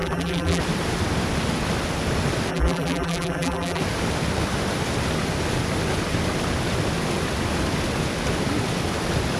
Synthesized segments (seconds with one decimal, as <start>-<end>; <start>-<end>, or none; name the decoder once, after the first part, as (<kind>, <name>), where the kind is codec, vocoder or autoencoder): 0.0-0.6 (vocoder, BigVGAN v2); 2.5-3.8